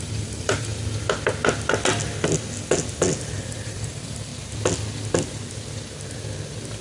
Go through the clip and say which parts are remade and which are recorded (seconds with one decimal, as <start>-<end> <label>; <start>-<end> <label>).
0.0-0.7 remade; 0.7-3.4 recorded; 3.4-4.3 remade; 4.3-6.8 recorded

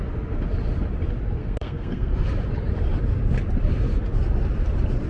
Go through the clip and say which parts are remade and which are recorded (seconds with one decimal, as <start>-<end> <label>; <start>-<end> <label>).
0.0-1.4 recorded; 1.4-2.1 remade; 2.1-5.1 recorded

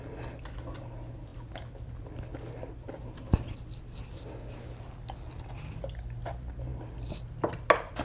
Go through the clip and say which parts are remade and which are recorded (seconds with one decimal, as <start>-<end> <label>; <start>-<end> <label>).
0.0-8.0 recorded

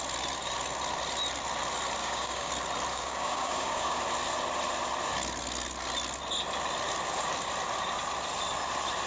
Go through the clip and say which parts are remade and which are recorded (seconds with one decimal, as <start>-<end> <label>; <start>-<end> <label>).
0.0-2.0 recorded; 2.0-2.5 remade; 2.5-2.9 recorded; 2.9-4.0 remade; 4.0-9.1 recorded